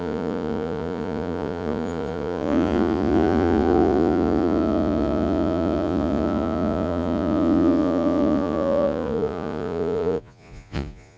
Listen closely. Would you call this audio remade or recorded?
remade